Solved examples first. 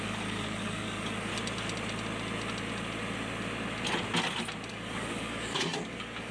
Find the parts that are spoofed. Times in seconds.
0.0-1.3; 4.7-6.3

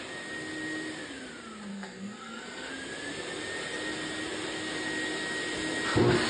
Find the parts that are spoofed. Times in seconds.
1.7-2.7

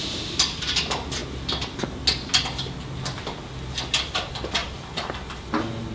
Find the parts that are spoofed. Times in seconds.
none

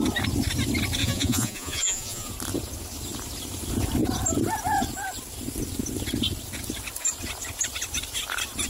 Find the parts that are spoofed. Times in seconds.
1.0-2.3

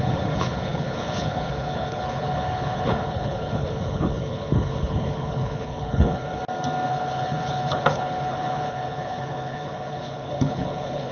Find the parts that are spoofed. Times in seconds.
0.0-6.4; 6.9-11.1